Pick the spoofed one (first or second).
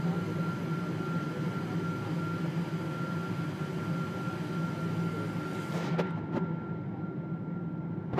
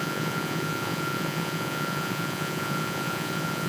second